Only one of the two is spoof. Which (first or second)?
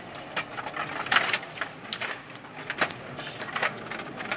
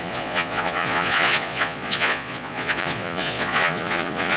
second